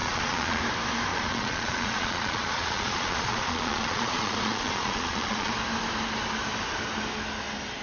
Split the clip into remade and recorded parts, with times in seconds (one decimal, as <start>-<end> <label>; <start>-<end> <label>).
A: 0.0-0.6 remade; 0.6-1.1 recorded; 1.1-5.5 remade; 5.5-7.8 recorded